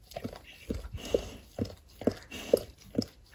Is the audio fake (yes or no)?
no